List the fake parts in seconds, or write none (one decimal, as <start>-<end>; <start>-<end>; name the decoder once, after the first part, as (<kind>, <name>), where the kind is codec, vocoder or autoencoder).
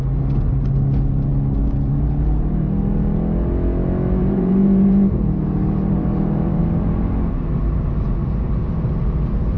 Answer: 4.2-6.6 (vocoder, BigVGAN v2)